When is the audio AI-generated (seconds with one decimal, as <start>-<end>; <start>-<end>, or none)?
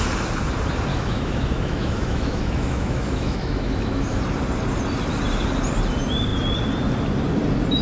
0.9-4.2